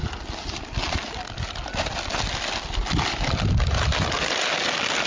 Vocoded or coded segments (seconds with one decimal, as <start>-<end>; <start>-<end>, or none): none